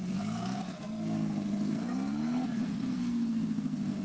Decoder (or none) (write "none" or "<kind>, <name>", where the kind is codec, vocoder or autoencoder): codec, SNAC